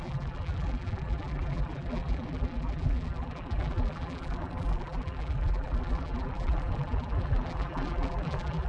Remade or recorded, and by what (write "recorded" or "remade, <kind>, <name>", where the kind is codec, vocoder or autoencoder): remade, vocoder, BigVGAN v2